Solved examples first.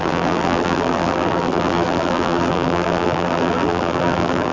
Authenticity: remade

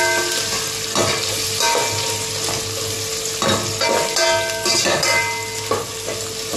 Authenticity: recorded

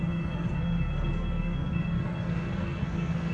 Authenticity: remade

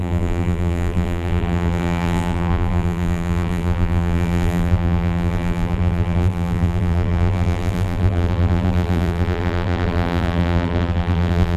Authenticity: remade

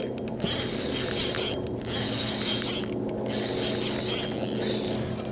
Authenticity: recorded